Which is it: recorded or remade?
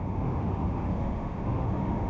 remade